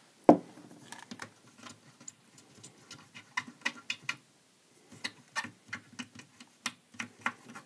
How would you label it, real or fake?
real